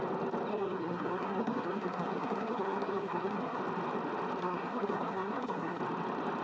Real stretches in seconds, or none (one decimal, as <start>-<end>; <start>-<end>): 0.0-0.5; 3.6-4.4; 5.8-6.4